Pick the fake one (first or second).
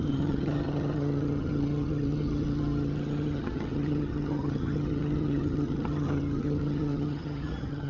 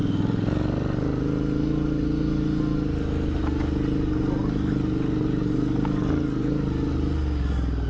first